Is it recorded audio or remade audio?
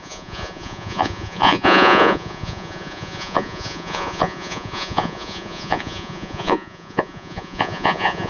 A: remade